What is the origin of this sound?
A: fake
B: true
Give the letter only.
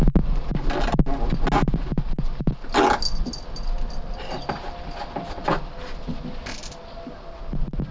B